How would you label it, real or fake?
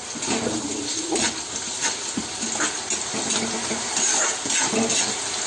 real